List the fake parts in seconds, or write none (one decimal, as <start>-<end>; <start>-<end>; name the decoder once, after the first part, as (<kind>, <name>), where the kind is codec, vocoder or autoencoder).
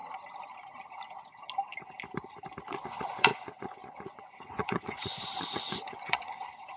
2.7-6.8 (vocoder, Vocos)